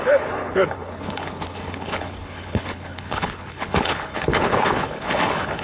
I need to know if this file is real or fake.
fake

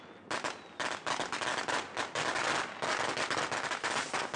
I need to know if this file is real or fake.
real